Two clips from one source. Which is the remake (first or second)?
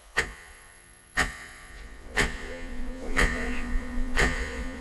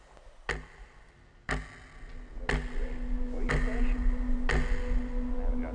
first